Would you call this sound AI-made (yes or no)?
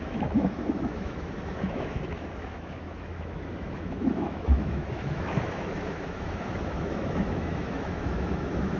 yes